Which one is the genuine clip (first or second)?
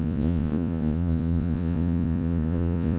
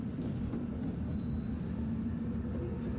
second